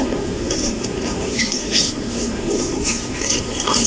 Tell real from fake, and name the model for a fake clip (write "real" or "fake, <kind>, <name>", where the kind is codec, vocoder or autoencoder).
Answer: fake, codec, SNAC